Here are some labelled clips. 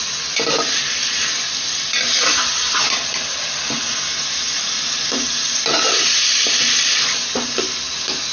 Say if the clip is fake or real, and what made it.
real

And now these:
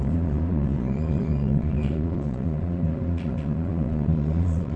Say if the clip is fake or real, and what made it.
fake, vocoder, Vocos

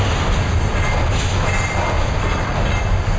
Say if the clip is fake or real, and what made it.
real